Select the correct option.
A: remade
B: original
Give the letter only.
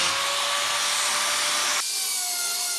B